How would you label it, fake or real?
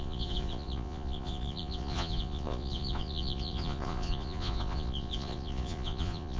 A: fake